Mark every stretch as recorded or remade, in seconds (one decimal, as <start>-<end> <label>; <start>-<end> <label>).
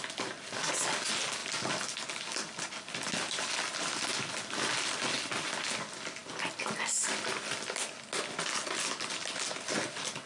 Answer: 0.0-10.3 recorded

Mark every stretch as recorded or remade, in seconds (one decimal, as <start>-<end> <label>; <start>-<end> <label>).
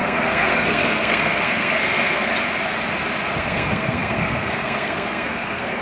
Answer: 0.0-2.3 remade; 2.3-3.4 recorded; 3.4-5.8 remade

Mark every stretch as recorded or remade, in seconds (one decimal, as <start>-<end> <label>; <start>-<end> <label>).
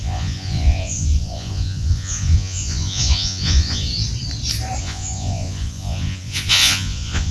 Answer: 0.0-3.9 remade; 3.9-4.8 recorded; 4.8-7.3 remade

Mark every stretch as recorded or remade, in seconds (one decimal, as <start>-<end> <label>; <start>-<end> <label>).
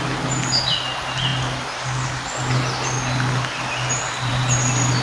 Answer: 0.0-5.0 recorded